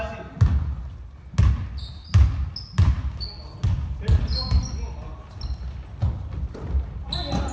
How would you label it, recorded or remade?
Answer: recorded